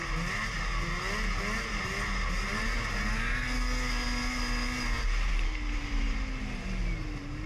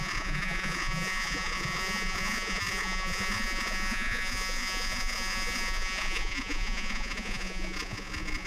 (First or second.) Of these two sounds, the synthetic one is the second